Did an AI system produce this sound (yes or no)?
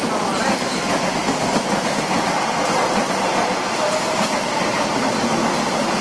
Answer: no